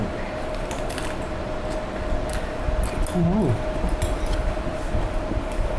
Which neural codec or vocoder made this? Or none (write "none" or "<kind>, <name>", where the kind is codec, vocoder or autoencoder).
none